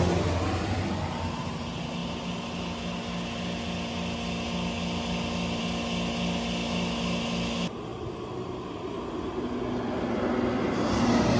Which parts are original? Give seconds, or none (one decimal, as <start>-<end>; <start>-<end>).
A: 0.0-7.9; 8.7-11.4

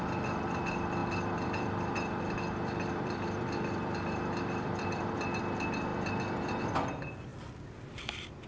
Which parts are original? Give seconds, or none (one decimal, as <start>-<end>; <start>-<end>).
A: 0.0-1.0; 5.4-5.9; 6.6-8.5